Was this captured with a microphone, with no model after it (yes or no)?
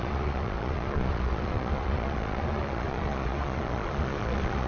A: no